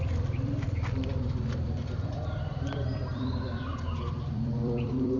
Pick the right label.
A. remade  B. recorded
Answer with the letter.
A